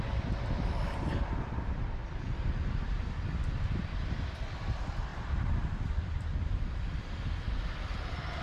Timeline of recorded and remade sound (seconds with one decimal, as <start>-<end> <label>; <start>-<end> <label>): 0.0-8.4 remade